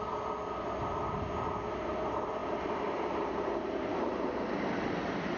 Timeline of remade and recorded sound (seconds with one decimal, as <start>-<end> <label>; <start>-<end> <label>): 0.0-2.4 recorded; 2.4-5.4 remade